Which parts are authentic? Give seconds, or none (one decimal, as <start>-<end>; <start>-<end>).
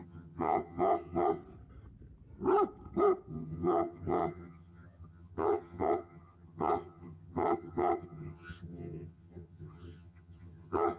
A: 1.4-3.3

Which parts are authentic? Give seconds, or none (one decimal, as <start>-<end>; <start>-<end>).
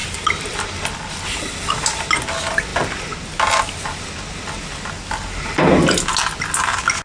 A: 0.0-7.0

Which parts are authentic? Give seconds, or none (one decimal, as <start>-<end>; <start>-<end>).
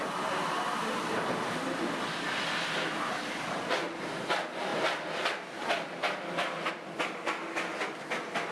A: 0.0-8.5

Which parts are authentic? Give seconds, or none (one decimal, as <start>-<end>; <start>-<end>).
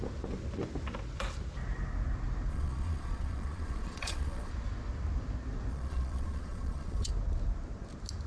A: 0.0-2.5; 4.5-5.7; 7.1-8.3